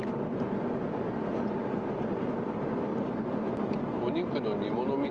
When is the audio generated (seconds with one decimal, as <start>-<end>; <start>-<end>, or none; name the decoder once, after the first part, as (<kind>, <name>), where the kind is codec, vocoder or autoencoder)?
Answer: 2.9-3.5 (vocoder, BigVGAN v2)